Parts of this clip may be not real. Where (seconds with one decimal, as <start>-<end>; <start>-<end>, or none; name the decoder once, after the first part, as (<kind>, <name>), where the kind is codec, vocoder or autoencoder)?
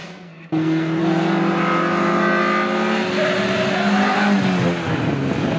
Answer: 0.0-1.0 (codec, SNAC)